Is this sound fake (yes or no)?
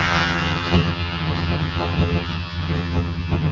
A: yes